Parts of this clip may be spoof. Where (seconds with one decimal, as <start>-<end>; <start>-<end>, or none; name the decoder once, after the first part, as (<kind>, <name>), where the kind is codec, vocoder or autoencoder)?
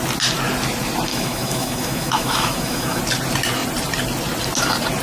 1.1-3.0 (autoencoder, DAC-VAE)